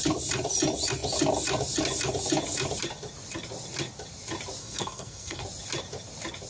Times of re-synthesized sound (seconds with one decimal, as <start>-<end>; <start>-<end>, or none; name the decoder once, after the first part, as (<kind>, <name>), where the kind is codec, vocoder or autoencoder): 4.6-5.4 (codec, SNAC)